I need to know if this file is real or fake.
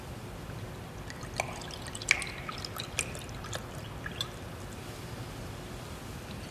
real